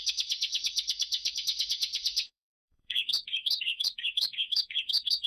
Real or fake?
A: fake